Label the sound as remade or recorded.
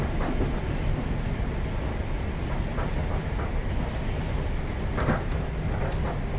recorded